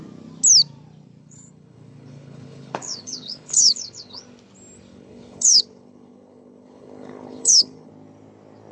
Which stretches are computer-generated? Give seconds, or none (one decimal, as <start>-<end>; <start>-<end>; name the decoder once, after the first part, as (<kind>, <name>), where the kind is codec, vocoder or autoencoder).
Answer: 1.2-4.2 (codec, HILCodec); 4.9-7.9